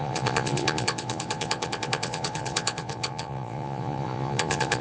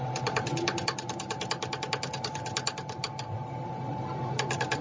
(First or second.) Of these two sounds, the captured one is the second